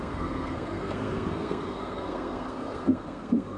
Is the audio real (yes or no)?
no